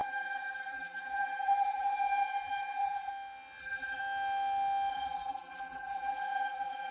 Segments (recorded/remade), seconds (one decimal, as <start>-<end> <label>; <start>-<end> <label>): 0.0-3.1 remade; 3.1-3.6 recorded; 3.6-4.0 remade; 4.0-4.9 recorded; 4.9-6.9 remade